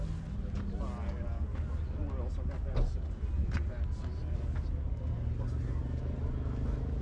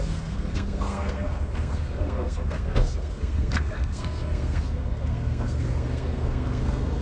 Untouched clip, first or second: first